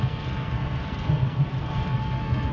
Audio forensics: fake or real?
fake